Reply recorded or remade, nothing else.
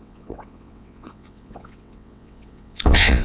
remade